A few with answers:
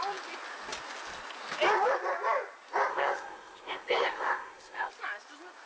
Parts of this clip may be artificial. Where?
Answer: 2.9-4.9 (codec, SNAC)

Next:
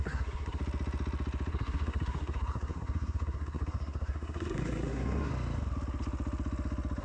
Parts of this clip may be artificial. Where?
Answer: 0.0-0.6 (codec, SNAC); 1.5-5.3

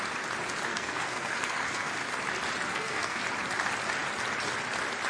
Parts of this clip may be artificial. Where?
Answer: 0.7-1.9 (codec, SNAC); 2.7-3.2

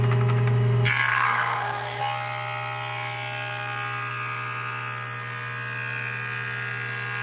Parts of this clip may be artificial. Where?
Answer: 1.1-2.0 (codec, SNAC)

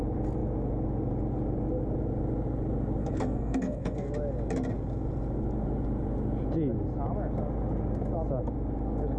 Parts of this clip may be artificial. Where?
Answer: 3.0-4.1 (codec, SNAC)

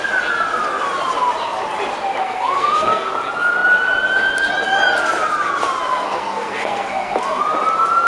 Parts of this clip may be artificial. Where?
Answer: 2.2-3.1 (codec, SNAC); 5.9-7.4

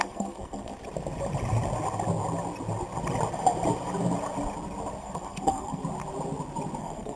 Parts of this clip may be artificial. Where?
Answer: 0.0-0.7 (codec, SNAC); 5.0-5.8; 6.8-7.2

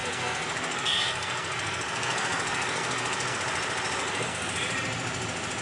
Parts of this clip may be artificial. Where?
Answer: 0.0-3.4 (codec, SNAC); 4.0-4.5